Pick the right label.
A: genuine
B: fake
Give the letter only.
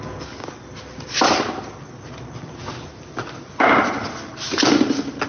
A